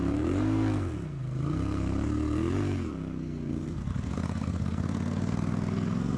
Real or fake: fake